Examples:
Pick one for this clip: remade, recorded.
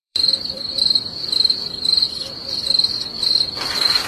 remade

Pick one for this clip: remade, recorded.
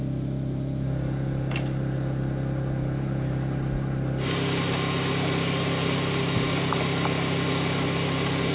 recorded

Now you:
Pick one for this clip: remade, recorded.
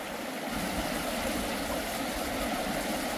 recorded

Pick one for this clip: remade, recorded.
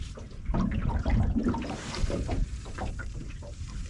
remade